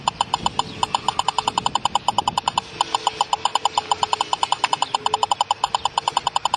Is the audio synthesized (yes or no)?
no